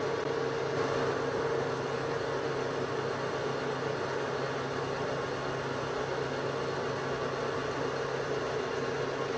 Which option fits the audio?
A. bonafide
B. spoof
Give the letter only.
A